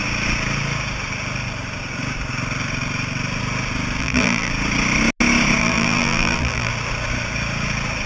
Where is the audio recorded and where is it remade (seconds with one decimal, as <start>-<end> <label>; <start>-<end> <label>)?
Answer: 0.0-4.0 recorded; 4.0-4.5 remade; 4.5-5.6 recorded; 5.6-6.7 remade; 6.7-8.1 recorded